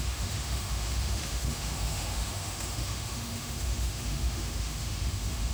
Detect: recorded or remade remade